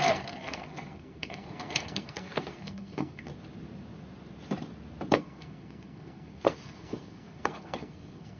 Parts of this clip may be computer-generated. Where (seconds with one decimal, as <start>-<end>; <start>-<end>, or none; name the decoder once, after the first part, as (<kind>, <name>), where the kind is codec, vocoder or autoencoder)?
0.0-3.3 (codec, SNAC); 5.1-8.4